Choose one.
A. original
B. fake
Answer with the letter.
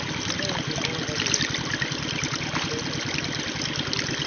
A